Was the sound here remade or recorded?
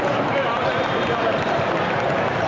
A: remade